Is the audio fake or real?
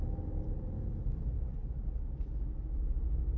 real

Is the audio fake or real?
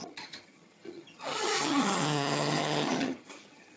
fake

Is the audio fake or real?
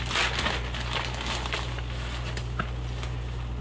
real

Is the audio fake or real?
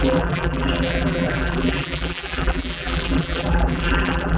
fake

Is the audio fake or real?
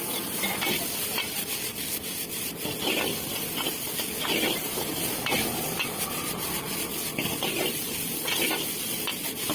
real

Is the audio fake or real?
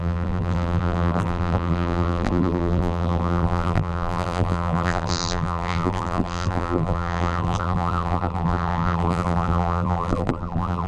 fake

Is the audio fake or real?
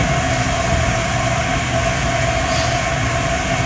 real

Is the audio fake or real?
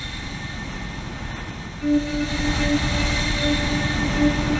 real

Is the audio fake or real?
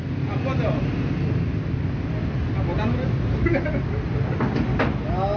real